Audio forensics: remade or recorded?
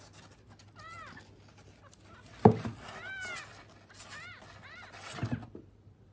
recorded